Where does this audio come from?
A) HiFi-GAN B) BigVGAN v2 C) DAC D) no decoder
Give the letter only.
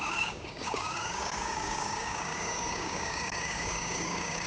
C